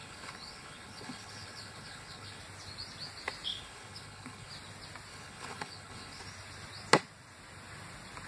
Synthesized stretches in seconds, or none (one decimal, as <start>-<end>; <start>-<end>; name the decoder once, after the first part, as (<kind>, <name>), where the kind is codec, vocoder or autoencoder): 0.0-2.4 (codec, HILCodec); 3.5-4.5; 5.1-6.2